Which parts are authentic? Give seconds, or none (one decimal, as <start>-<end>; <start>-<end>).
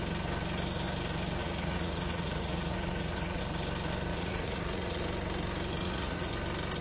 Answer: 0.0-1.4; 3.4-4.1; 5.0-5.8; 6.3-6.8